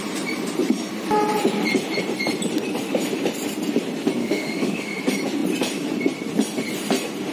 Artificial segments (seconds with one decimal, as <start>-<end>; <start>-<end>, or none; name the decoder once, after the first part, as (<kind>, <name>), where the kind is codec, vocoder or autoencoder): 4.2-5.0 (autoencoder, DAC-VAE)